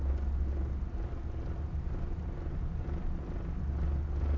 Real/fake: real